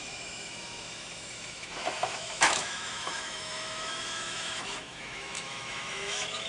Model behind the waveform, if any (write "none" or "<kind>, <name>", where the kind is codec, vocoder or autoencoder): autoencoder, DAC-VAE